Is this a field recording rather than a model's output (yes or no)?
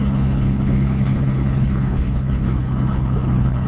no